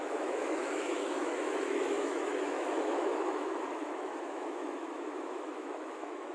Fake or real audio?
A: fake